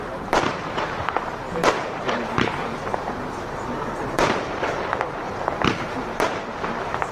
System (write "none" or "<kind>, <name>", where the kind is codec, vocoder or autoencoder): vocoder, BigVGAN v2